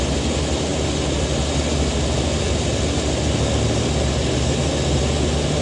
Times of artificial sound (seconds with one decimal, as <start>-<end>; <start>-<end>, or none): none